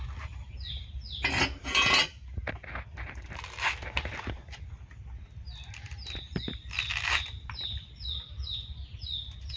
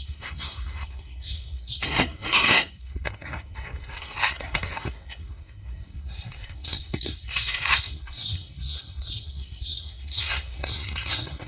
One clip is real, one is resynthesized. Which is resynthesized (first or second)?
second